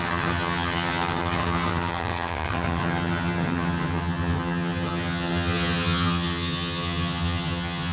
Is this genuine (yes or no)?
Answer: no